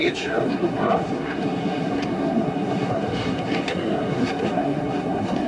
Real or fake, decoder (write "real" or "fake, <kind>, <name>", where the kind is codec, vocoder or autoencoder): fake, codec, SNAC